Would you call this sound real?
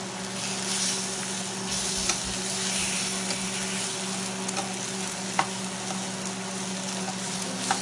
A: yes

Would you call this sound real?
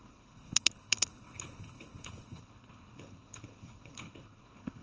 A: no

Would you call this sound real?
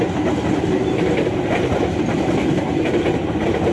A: yes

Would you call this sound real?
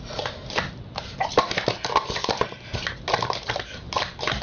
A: yes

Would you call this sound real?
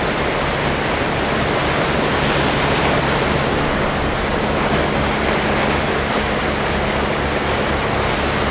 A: yes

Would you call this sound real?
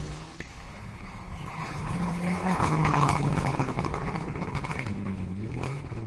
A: no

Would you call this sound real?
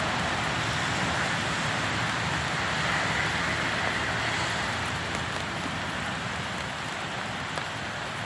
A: yes